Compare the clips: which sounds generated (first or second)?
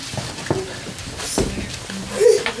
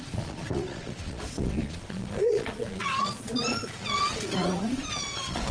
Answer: second